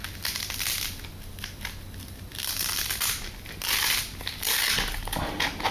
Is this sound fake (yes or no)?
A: no